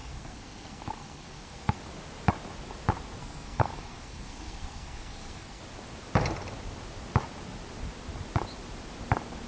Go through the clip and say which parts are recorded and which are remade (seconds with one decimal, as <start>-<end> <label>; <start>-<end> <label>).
0.0-1.8 remade; 1.8-3.2 recorded; 3.2-5.6 remade; 5.6-9.5 recorded